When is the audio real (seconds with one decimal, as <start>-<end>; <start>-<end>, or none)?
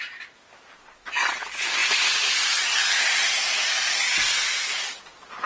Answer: 0.0-5.5